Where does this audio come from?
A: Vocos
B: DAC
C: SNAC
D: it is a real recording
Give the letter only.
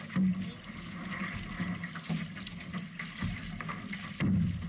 D